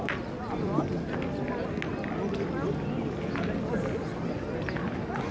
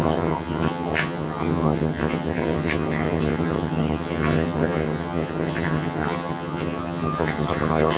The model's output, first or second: second